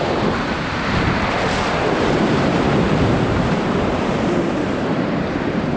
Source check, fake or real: fake